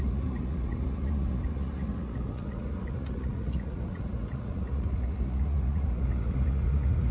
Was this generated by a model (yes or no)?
yes